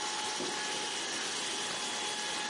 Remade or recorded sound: recorded